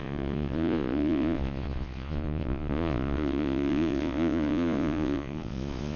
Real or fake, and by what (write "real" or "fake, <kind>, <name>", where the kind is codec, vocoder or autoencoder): fake, vocoder, Vocos